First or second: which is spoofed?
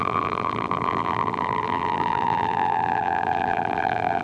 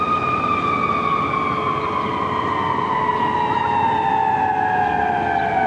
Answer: first